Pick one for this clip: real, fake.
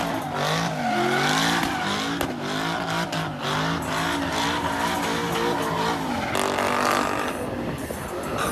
real